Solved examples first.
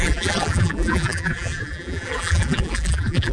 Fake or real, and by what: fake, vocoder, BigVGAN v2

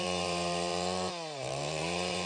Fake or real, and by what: fake, vocoder, BigVGAN v2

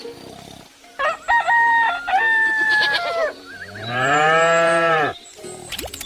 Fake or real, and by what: fake, vocoder, BigVGAN v2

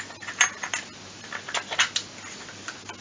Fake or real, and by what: real